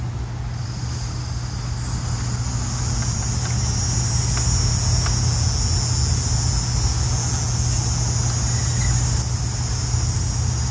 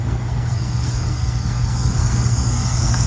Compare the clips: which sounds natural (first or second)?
first